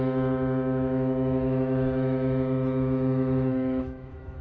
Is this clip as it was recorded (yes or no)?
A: no